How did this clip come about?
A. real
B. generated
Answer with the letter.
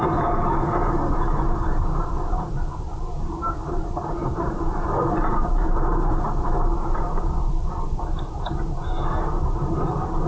B